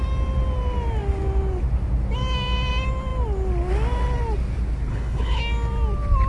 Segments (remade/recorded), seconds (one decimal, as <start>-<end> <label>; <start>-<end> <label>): 0.0-4.9 recorded; 4.9-5.4 remade; 5.4-6.3 recorded

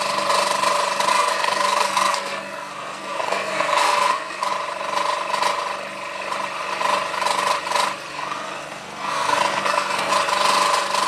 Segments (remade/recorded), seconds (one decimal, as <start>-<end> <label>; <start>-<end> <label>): 0.0-1.1 recorded; 1.1-4.5 remade; 4.5-8.1 recorded; 8.1-10.1 remade; 10.1-11.1 recorded

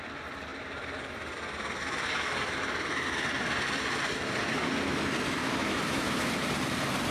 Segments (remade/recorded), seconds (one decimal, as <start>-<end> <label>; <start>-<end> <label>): 0.0-5.4 recorded; 5.4-6.3 remade; 6.3-7.1 recorded

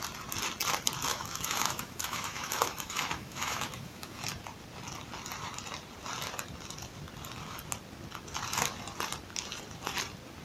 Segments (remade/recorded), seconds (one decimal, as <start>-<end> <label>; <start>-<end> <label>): 0.0-1.1 recorded; 1.1-4.2 remade; 4.2-10.4 recorded

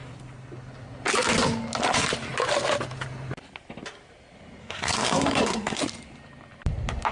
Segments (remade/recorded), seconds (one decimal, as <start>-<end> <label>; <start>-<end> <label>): 0.0-4.6 recorded; 4.6-5.8 remade; 5.8-7.1 recorded

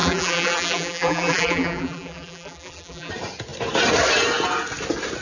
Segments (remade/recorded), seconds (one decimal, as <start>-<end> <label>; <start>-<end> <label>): 0.0-3.1 remade; 3.1-5.2 recorded